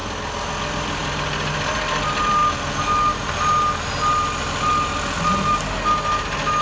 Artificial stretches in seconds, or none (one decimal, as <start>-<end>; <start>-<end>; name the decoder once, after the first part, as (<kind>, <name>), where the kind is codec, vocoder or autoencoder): none